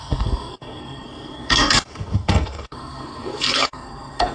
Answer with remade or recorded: remade